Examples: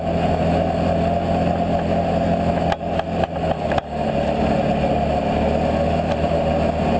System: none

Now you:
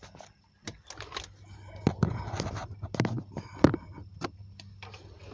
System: none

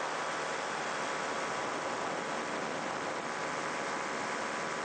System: vocoder, BigVGAN v2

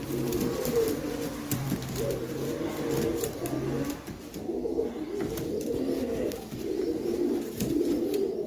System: none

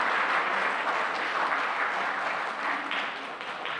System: none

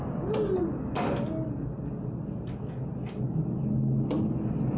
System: none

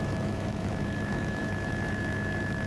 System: autoencoder, DAC-VAE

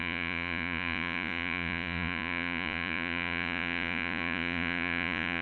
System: vocoder, Vocos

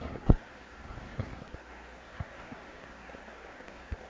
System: codec, SNAC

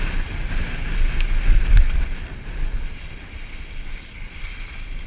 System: none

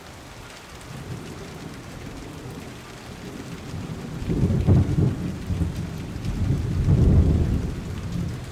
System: none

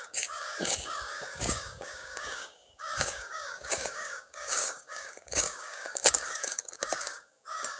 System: codec, DAC